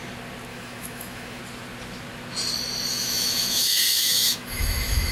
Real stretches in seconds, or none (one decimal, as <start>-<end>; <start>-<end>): 0.0-0.5; 1.4-2.9